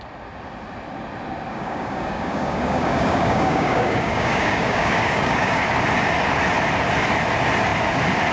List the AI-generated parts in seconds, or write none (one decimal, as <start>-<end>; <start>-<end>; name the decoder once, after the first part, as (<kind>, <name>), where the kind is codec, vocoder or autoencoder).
1.5-5.6 (codec, DAC)